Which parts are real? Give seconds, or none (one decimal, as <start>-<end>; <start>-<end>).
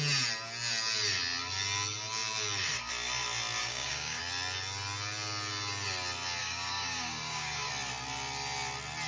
0.0-3.6; 4.2-6.4; 7.7-9.1